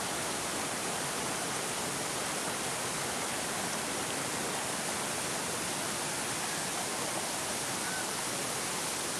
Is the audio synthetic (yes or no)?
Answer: no